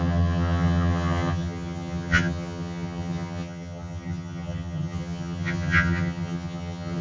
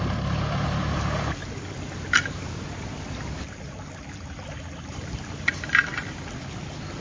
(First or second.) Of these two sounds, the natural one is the second